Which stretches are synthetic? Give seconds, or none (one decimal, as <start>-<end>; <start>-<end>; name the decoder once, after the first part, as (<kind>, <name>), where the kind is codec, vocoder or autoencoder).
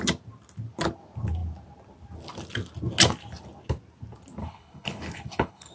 4.4-5.7 (codec, HILCodec)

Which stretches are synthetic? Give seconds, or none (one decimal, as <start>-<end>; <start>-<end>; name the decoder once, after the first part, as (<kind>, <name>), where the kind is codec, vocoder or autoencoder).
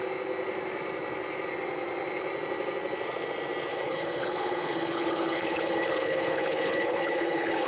3.7-7.7 (codec, HILCodec)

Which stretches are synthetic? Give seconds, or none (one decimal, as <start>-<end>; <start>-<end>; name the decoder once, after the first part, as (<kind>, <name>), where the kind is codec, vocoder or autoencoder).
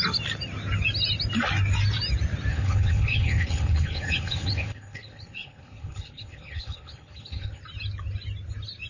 2.5-7.6 (codec, HILCodec)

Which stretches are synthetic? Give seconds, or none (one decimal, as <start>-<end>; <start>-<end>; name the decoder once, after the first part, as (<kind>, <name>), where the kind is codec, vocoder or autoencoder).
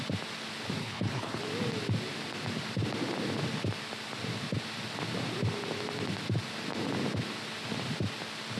0.8-1.4 (codec, HILCodec)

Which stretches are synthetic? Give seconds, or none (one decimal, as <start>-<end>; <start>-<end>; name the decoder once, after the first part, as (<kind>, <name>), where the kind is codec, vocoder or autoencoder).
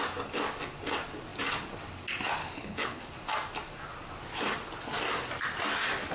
2.4-3.0 (codec, HILCodec)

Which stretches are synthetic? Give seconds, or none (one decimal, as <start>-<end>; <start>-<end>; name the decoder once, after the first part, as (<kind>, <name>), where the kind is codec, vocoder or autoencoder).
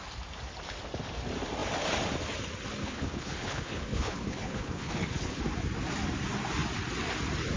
2.8-5.4 (codec, HILCodec)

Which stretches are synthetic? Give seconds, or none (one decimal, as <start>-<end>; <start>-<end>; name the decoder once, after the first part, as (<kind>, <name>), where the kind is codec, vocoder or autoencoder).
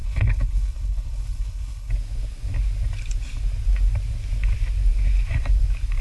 0.0-1.9 (codec, HILCodec)